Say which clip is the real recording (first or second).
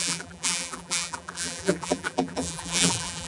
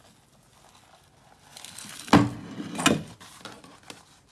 second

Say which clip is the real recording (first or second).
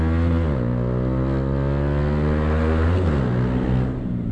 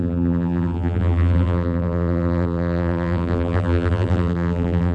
first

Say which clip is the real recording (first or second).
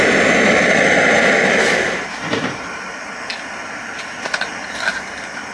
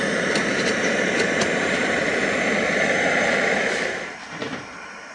first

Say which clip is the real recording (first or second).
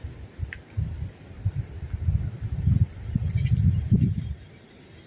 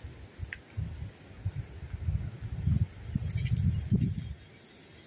second